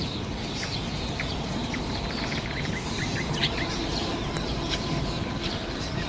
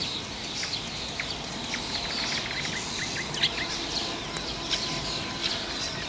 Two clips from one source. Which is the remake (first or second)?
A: first